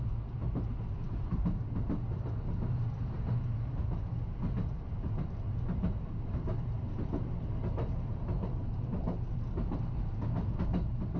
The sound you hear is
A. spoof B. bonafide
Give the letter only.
B